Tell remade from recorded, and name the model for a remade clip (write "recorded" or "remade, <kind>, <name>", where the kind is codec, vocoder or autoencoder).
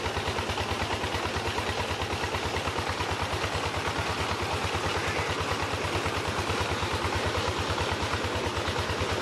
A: recorded